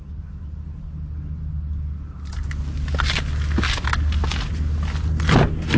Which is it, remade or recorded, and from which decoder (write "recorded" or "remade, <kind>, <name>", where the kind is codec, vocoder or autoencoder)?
recorded